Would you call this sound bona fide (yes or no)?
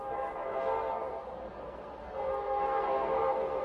no